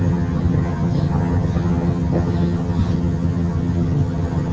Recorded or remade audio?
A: remade